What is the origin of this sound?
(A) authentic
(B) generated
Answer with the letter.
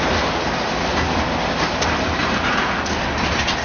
A